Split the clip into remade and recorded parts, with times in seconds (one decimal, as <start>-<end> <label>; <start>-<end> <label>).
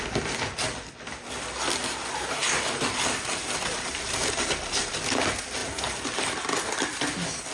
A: 0.0-2.4 recorded; 2.4-5.0 remade; 5.0-7.5 recorded